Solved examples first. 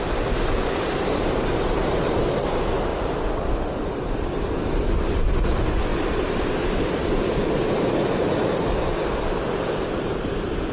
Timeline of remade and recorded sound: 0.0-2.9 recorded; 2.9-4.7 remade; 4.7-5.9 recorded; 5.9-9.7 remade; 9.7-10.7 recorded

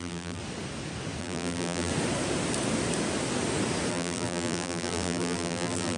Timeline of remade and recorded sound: 0.0-0.4 remade; 0.4-1.2 recorded; 1.2-1.9 remade; 1.9-3.9 recorded; 3.9-6.0 remade

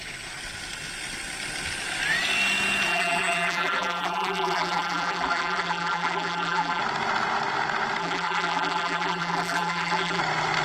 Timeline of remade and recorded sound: 0.0-2.9 recorded; 2.9-6.8 remade; 6.8-8.0 recorded; 8.0-10.2 remade; 10.2-10.6 recorded